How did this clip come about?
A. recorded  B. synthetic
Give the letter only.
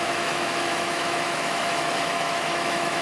B